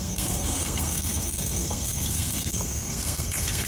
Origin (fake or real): fake